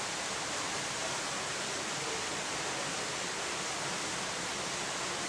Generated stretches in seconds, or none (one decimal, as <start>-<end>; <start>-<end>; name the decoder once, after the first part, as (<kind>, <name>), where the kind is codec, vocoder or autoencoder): none